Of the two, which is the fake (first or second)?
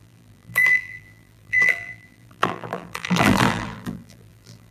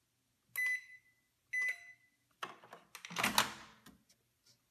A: first